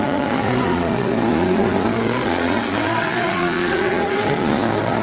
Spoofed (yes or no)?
yes